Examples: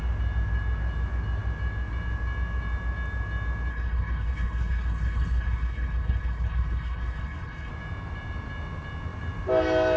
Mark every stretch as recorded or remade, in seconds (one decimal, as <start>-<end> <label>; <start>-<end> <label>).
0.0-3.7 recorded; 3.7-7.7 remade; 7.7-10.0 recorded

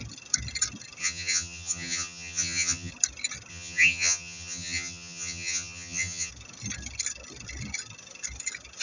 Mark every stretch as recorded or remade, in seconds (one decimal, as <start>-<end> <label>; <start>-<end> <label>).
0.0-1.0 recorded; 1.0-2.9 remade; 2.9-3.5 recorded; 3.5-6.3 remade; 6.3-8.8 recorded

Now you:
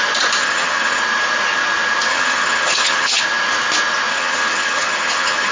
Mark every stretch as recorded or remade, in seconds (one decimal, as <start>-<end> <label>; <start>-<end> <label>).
0.0-0.4 recorded; 0.4-1.0 remade; 1.0-2.1 recorded; 2.1-3.2 remade; 3.2-4.1 recorded; 4.1-5.5 remade

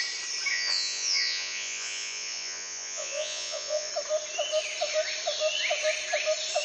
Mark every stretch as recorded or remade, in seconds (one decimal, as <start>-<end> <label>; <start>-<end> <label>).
0.0-0.5 recorded; 0.5-3.9 remade; 3.9-6.6 recorded

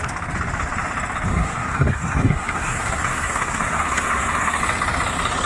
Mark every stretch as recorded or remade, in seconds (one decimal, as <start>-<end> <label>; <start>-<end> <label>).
0.0-1.3 recorded; 1.3-4.6 remade; 4.6-5.5 recorded

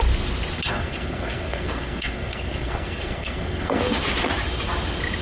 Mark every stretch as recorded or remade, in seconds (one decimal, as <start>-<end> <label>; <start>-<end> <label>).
0.0-0.7 recorded; 0.7-3.8 remade; 3.8-5.2 recorded